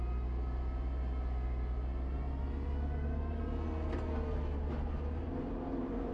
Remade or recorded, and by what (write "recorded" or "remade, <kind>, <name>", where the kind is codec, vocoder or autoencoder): recorded